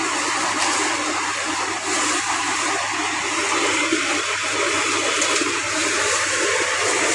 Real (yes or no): no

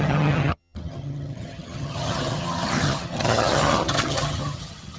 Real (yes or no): no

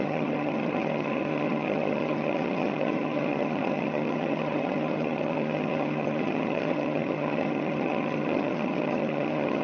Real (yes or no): no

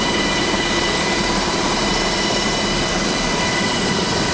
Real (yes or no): no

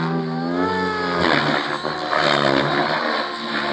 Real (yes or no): yes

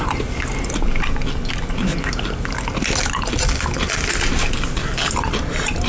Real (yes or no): yes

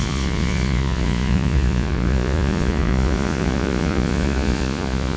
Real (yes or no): no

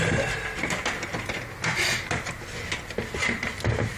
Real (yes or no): yes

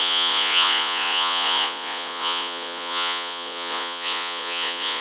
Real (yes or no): no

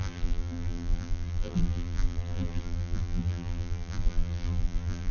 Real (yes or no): no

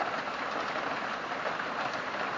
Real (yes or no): yes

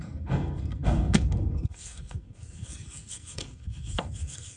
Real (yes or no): no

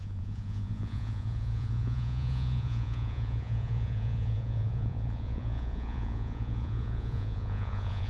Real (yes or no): no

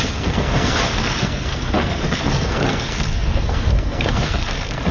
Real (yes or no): no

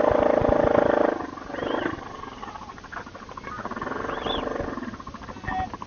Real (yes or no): yes